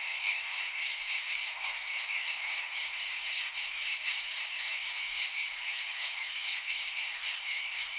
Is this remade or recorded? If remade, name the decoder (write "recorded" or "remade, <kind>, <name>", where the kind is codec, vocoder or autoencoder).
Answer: remade, codec, DAC